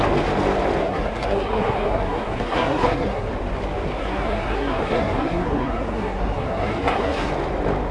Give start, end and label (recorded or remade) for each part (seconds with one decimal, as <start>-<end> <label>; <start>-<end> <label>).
0.0-0.8 recorded; 0.8-3.3 remade; 3.3-4.0 recorded; 4.0-7.3 remade; 7.3-7.9 recorded